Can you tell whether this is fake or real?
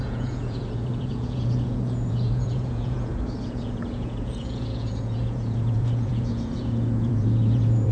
fake